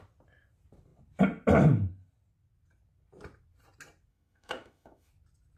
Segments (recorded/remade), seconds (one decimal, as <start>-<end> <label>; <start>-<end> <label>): 0.0-4.1 recorded; 4.1-5.1 remade; 5.1-5.6 recorded